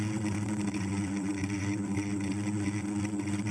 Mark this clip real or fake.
fake